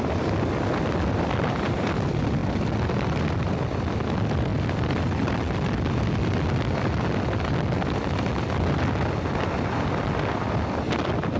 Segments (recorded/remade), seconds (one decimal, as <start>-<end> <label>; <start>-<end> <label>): 0.0-2.4 recorded; 2.4-3.6 remade; 3.6-11.4 recorded